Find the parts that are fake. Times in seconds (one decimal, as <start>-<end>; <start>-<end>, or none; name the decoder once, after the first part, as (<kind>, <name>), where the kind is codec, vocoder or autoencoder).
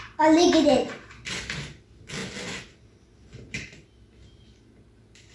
none